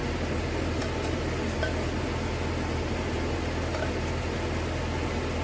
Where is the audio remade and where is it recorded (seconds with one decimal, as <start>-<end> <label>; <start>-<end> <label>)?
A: 0.0-5.4 recorded